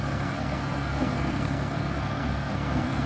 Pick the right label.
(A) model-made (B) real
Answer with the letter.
A